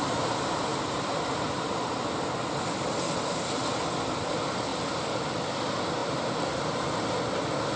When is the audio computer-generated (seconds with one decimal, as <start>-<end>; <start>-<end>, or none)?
0.7-2.0; 4.7-5.3; 6.0-6.8